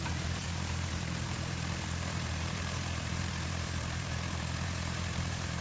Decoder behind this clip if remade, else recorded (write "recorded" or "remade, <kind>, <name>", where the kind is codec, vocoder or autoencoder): remade, vocoder, BigVGAN v2